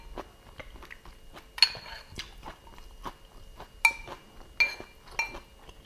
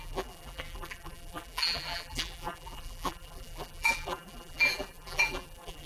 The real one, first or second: first